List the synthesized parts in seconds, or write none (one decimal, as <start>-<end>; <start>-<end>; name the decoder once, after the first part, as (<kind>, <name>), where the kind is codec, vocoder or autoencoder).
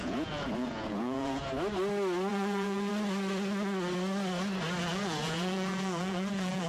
0.0-1.4 (vocoder, Vocos); 2.3-2.9; 4.8-6.7